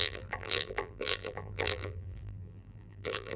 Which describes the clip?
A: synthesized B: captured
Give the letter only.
A